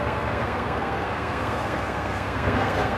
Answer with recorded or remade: remade